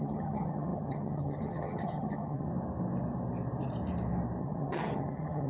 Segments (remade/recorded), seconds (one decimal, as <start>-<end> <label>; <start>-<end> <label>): 0.0-2.5 remade; 2.5-4.4 recorded; 4.4-5.5 remade